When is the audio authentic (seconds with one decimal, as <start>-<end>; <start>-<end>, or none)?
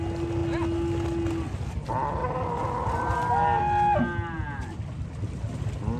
0.0-6.0